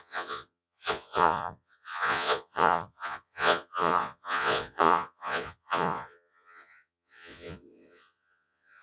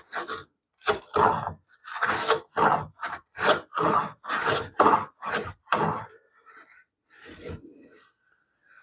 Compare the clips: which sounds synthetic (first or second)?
first